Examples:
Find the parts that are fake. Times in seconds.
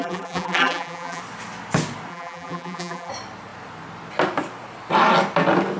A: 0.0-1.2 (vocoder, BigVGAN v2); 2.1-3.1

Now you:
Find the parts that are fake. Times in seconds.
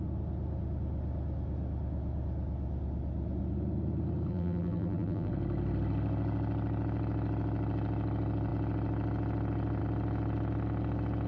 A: 4.3-5.3 (vocoder, BigVGAN v2)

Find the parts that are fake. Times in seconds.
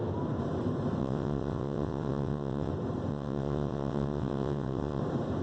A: 1.0-2.7 (vocoder, WaveNeXt); 3.1-5.0